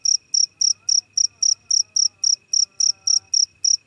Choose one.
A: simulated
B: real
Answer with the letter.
B